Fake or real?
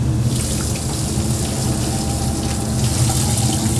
real